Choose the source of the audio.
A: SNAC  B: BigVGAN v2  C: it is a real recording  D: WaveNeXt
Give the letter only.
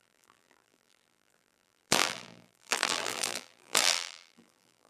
B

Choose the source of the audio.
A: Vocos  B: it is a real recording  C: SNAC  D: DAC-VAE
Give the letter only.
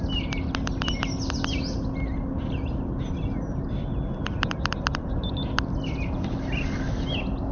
B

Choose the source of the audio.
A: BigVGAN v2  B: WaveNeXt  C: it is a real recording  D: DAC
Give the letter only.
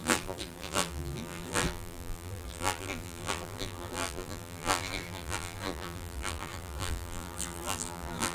A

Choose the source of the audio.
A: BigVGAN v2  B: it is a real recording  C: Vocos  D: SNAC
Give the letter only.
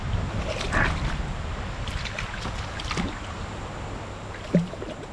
B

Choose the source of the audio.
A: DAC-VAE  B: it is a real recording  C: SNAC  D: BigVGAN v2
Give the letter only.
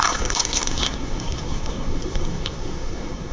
C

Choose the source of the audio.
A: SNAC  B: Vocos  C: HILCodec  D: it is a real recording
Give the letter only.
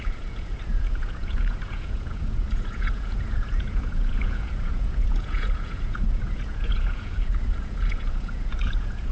B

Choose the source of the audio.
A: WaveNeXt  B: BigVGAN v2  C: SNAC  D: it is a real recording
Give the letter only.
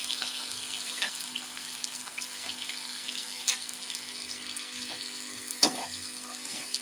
C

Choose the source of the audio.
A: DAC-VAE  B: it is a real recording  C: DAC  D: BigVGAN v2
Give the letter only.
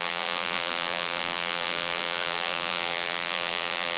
D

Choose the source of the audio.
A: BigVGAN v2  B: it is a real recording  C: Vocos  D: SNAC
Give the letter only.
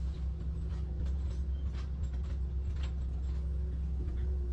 B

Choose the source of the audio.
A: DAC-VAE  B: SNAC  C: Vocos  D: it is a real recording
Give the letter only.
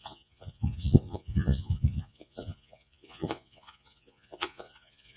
C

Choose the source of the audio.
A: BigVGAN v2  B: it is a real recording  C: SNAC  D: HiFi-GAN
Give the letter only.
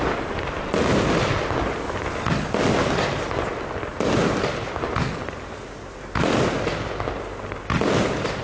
B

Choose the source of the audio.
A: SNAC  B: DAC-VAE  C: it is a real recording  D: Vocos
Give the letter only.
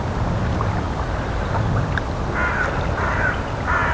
C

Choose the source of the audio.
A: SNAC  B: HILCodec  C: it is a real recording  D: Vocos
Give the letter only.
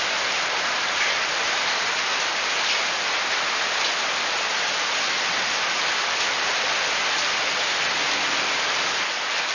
C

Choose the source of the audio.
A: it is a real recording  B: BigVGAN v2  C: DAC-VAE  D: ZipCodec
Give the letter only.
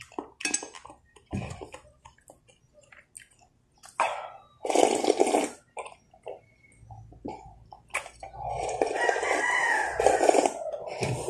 A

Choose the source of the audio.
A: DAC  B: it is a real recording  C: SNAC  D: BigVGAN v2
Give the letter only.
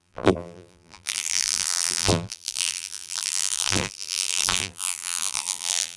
D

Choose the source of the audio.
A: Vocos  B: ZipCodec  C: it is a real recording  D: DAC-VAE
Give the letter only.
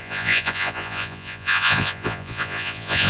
A